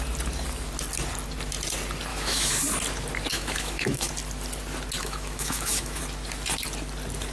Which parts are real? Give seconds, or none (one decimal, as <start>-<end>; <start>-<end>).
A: 0.0-2.1; 2.6-3.3; 4.1-5.0; 6.0-7.3